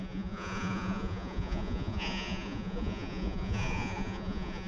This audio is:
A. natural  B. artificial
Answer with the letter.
B